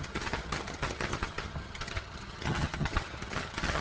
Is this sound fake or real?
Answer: fake